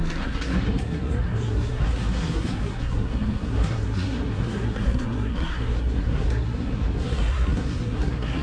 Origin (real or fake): fake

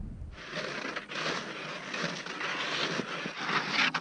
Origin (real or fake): real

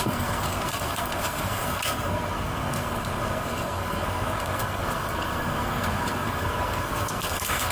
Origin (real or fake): fake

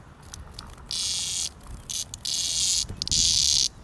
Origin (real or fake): real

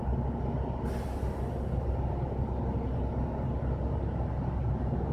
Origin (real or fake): real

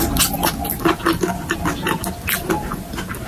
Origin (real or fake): real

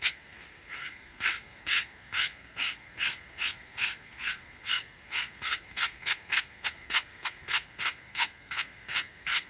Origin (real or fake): fake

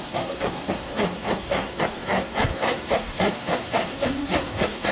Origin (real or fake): fake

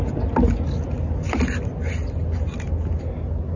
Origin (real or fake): real